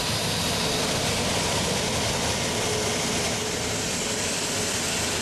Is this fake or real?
real